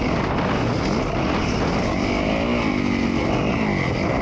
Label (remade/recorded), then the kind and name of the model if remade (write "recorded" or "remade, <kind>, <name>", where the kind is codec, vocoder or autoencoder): recorded